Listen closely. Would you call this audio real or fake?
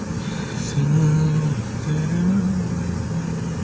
real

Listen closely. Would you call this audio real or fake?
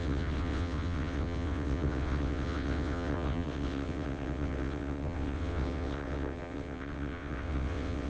fake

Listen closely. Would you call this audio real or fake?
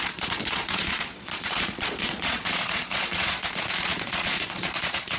fake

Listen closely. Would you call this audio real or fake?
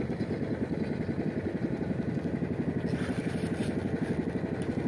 real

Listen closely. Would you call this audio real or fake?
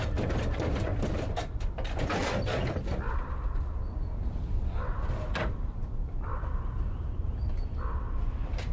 real